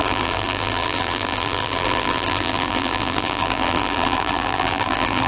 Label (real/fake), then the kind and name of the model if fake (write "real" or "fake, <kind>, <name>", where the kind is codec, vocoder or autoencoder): fake, vocoder, BigVGAN v2